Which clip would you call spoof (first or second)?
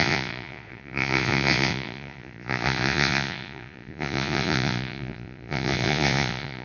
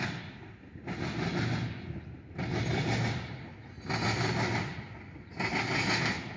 first